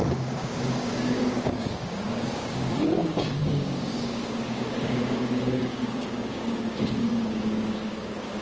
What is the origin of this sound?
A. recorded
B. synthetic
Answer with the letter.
B